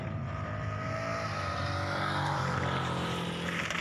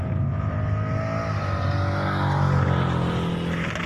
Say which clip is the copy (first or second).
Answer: first